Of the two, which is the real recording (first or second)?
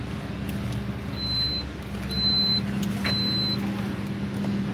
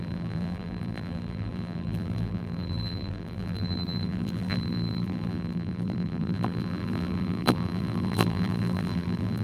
first